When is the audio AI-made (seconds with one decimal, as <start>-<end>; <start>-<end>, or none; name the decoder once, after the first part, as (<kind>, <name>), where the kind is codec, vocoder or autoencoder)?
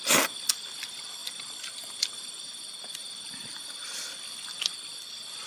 0.0-3.0 (vocoder, BigVGAN v2); 3.9-5.5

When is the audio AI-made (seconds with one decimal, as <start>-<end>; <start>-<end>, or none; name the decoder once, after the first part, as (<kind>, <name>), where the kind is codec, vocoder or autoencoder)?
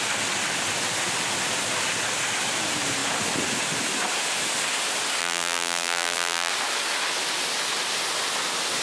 5.2-6.5 (vocoder, BigVGAN v2)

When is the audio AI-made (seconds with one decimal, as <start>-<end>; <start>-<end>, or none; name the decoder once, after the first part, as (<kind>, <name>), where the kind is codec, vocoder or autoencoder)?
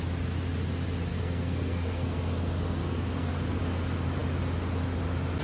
1.1-3.6 (codec, SNAC)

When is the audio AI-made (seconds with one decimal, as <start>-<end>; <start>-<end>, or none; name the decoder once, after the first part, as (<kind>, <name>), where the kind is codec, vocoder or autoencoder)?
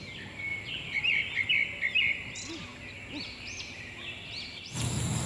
none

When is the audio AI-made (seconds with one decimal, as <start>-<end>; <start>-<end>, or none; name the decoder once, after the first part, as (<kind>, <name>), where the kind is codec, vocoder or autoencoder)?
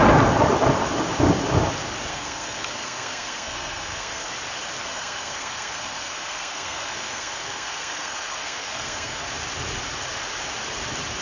2.1-4.3 (codec, SNAC); 4.8-9.3